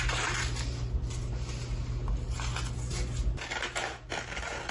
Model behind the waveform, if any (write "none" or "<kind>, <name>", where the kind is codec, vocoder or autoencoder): none